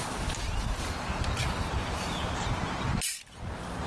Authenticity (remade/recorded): recorded